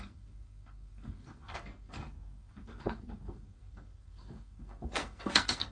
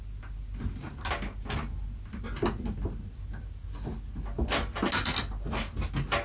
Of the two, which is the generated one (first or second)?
first